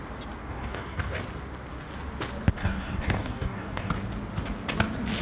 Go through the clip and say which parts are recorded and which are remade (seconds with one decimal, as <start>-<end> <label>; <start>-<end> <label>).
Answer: 0.0-0.4 recorded; 0.4-1.2 remade; 1.2-2.6 recorded; 2.6-3.9 remade; 3.9-5.2 recorded